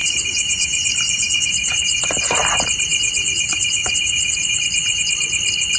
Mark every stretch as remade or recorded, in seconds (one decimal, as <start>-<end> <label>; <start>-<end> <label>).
0.0-2.0 remade; 2.0-2.9 recorded; 2.9-5.0 remade; 5.0-5.8 recorded